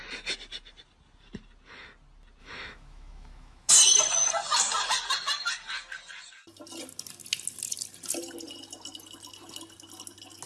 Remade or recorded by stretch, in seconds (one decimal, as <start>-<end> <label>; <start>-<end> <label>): 0.0-2.4 recorded; 2.4-3.7 remade; 3.7-10.5 recorded